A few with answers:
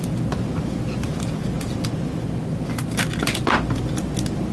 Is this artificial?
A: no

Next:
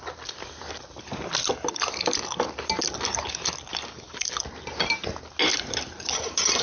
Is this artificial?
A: no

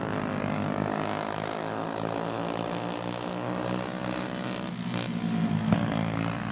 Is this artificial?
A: no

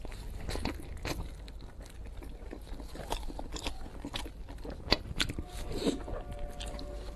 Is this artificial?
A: no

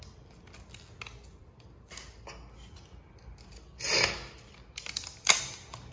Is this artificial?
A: no